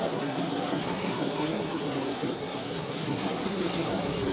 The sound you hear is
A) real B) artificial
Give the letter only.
B